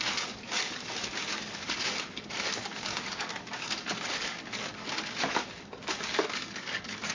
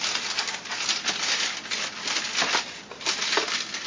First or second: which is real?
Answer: second